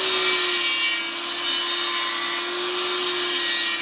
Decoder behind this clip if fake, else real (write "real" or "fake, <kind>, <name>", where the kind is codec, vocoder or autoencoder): real